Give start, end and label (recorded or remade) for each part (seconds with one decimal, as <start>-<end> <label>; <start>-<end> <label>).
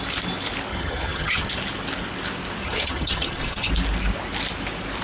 0.0-0.7 recorded; 0.7-1.5 remade; 1.5-2.6 recorded; 2.6-3.7 remade; 3.7-5.0 recorded